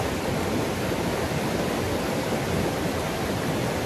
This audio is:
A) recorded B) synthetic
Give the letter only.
B